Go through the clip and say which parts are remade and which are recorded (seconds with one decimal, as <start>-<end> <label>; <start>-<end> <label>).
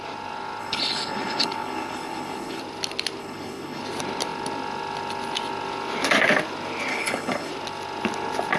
0.0-0.6 recorded; 0.6-2.6 remade; 2.6-3.2 recorded; 3.2-3.8 remade; 3.8-6.9 recorded; 6.9-7.5 remade; 7.5-8.6 recorded